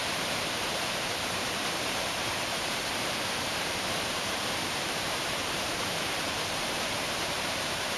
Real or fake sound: fake